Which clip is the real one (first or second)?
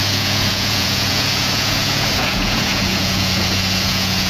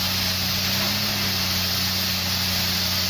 second